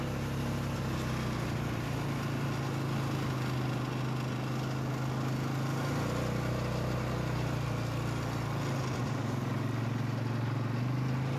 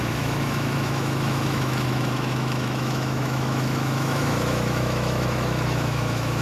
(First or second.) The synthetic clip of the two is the second